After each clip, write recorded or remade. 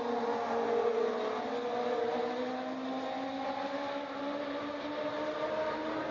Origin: recorded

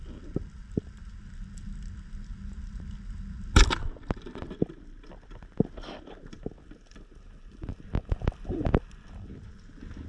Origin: recorded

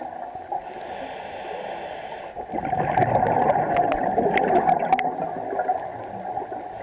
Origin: recorded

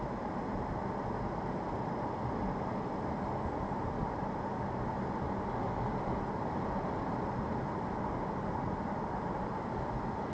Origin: recorded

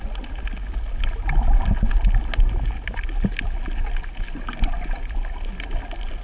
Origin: recorded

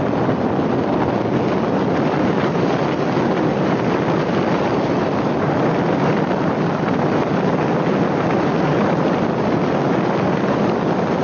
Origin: recorded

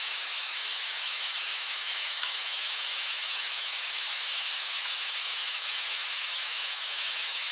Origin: remade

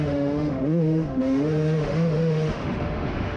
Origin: remade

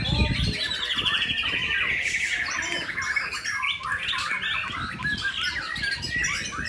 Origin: recorded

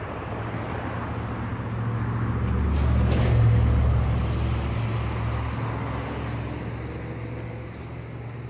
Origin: recorded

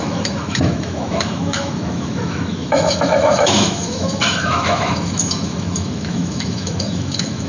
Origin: remade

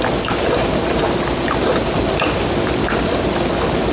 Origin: recorded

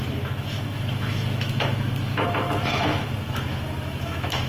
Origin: remade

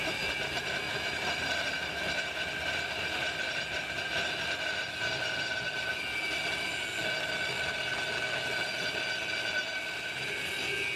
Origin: recorded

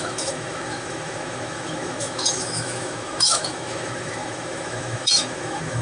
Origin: remade